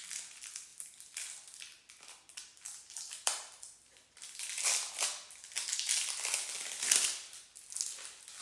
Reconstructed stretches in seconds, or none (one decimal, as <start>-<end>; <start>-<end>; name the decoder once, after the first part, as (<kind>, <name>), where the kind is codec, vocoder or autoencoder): none